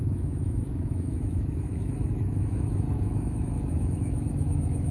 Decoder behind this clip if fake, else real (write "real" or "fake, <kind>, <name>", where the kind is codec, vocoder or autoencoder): fake, autoencoder, DAC-VAE